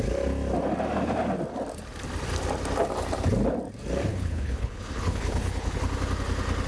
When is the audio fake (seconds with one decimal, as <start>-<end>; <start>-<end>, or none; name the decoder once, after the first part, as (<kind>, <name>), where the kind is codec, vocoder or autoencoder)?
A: 4.1-5.8 (codec, HILCodec)